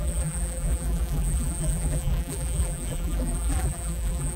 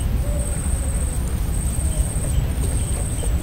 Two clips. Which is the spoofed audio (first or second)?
first